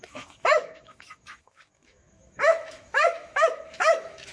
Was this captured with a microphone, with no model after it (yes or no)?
no